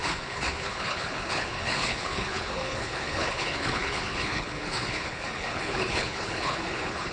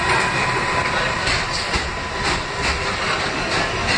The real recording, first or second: second